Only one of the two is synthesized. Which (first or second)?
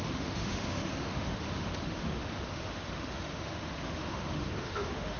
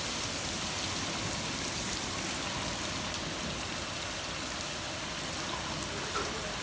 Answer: first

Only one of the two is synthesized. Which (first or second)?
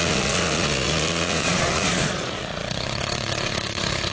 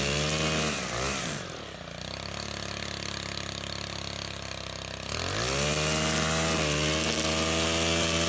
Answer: first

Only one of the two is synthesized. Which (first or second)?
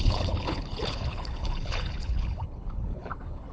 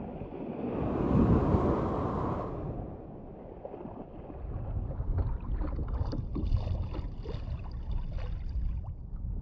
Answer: first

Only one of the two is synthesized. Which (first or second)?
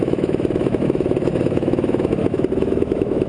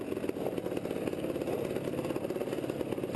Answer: first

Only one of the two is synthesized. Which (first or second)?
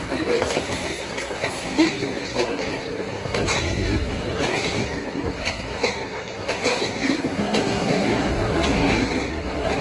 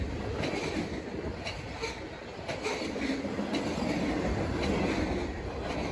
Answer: first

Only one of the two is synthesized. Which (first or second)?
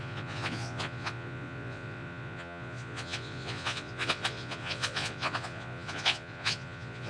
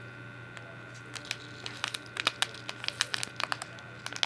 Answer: first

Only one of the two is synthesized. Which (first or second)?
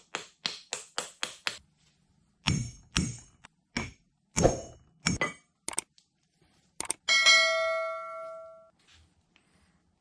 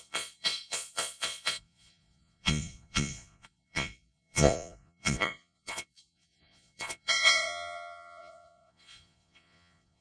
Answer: second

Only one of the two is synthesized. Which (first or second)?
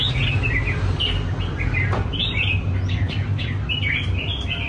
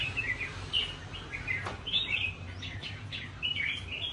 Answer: second